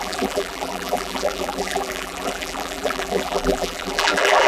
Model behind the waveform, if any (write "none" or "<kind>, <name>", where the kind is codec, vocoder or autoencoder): vocoder, BigVGAN v2